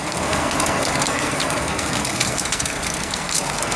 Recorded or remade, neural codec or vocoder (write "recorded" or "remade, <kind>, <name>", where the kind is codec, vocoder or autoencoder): remade, codec, SNAC